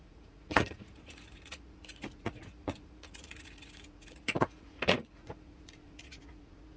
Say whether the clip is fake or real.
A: fake